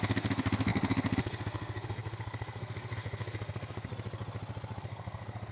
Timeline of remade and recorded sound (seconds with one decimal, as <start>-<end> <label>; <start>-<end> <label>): 0.0-3.9 remade; 3.9-4.8 recorded; 4.8-5.5 remade